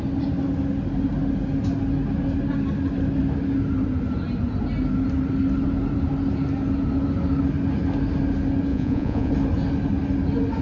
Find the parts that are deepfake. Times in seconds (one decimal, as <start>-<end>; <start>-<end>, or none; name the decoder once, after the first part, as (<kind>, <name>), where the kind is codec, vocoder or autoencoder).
8.7-9.3 (vocoder, Vocos)